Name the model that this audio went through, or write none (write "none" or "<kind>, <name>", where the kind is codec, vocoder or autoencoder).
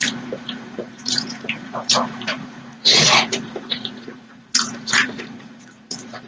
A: vocoder, Vocos